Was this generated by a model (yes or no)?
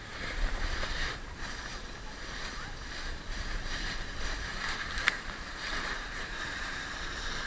yes